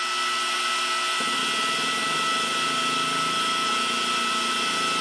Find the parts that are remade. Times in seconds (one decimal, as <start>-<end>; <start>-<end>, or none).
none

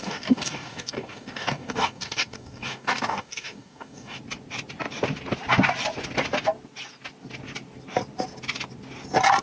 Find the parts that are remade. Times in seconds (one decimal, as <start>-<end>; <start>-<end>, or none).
0.0-4.2

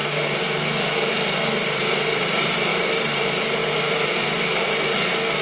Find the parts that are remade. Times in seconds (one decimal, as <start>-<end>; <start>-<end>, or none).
0.0-2.7; 3.2-3.6